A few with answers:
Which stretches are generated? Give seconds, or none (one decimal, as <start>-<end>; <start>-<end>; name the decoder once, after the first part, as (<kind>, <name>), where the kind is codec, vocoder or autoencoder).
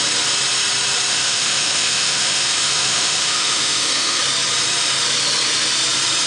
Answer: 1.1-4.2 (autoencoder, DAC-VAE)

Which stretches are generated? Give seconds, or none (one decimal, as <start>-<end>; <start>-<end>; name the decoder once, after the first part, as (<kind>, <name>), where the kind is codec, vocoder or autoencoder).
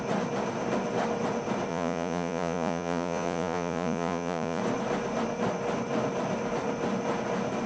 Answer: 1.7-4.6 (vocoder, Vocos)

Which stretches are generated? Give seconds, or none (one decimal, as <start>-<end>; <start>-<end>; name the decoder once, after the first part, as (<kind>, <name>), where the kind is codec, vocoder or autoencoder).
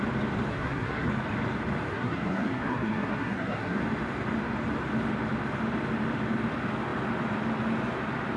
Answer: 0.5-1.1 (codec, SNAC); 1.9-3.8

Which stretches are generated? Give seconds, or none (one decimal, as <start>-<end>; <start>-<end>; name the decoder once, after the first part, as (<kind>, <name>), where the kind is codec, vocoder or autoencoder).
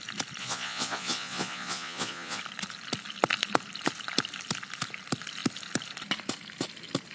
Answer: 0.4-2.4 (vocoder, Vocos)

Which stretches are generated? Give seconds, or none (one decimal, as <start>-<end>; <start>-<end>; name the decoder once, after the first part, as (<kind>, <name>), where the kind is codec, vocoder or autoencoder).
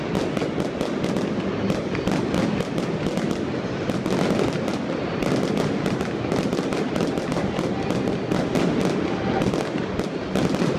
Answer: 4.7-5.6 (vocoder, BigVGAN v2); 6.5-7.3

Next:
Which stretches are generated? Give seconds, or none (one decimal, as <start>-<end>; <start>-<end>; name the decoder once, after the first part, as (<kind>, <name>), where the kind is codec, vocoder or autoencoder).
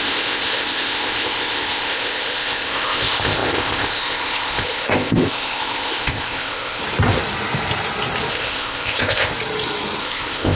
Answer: 0.0-6.8 (codec, ZipCodec); 8.3-9.3; 10.0-10.6